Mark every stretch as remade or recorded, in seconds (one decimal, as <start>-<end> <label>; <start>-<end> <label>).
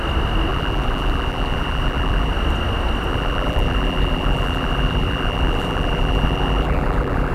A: 0.0-0.5 recorded; 0.5-2.3 remade; 2.3-3.1 recorded; 3.1-7.3 remade